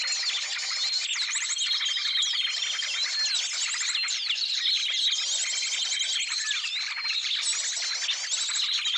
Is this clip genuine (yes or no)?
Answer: yes